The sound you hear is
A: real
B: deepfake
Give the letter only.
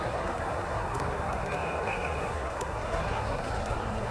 B